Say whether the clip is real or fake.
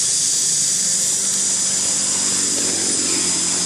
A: real